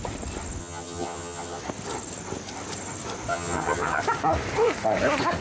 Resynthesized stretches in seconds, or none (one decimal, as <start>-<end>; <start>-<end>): 0.6-1.6; 3.3-4.0